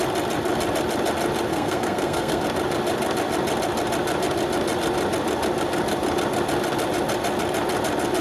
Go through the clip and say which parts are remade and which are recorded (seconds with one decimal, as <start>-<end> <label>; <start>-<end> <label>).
0.0-1.5 recorded; 1.5-2.4 remade; 2.4-8.2 recorded